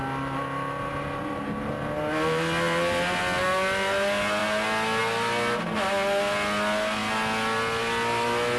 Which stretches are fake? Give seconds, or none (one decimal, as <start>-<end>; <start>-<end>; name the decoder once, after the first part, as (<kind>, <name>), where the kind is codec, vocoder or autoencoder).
none